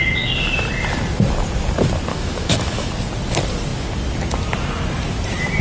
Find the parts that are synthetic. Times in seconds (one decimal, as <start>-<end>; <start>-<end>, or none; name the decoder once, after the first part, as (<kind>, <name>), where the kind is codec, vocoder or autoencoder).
2.1-2.9 (autoencoder, DAC-VAE)